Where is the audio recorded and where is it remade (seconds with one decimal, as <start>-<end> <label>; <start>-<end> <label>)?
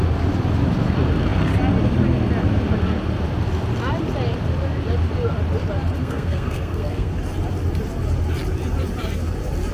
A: 0.0-6.0 recorded; 6.0-7.1 remade; 7.1-9.7 recorded